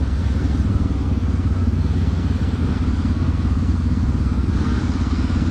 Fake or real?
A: fake